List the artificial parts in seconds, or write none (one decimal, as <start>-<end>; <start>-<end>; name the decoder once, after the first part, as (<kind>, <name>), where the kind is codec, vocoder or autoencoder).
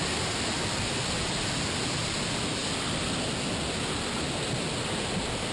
none